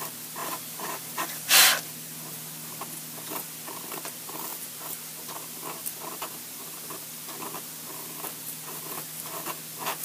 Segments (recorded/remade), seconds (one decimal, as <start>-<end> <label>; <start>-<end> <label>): 0.0-0.4 recorded; 0.4-1.8 remade; 1.8-10.0 recorded